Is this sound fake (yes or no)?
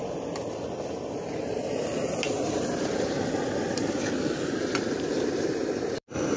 yes